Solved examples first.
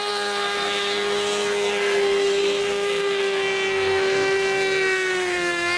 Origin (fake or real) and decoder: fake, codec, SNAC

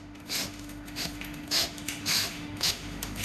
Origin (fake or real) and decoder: fake, autoencoder, DAC-VAE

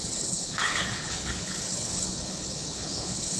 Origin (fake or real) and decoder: fake, codec, HILCodec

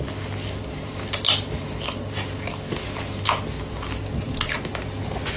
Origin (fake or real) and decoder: real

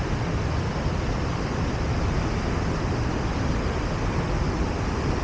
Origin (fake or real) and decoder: real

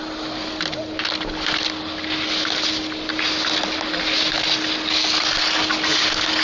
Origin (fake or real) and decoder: real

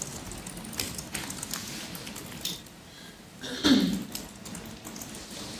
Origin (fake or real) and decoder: real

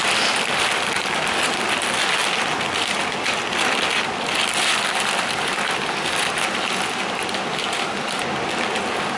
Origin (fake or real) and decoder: fake, vocoder, BigVGAN v2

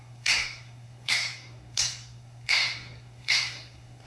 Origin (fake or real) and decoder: fake, codec, SNAC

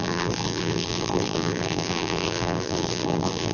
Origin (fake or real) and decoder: fake, vocoder, BigVGAN v2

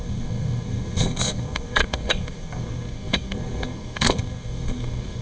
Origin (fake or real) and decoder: fake, codec, SNAC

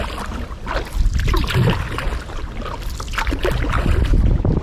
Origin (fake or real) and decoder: real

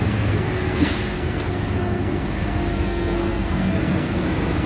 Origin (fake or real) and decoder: fake, codec, SNAC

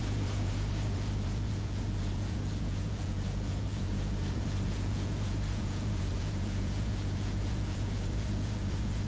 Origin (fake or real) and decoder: fake, vocoder, Vocos